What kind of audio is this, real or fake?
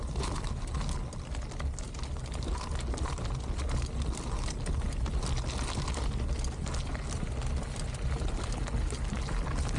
real